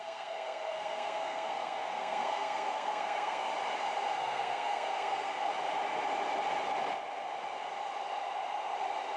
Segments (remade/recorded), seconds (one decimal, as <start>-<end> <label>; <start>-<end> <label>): 0.0-3.5 remade; 3.5-4.1 recorded; 4.1-5.5 remade; 5.5-9.2 recorded